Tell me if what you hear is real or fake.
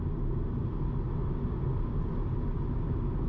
real